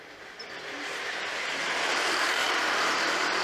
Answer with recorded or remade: remade